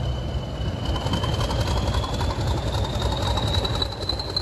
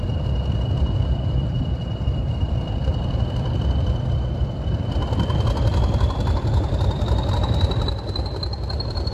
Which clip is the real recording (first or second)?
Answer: first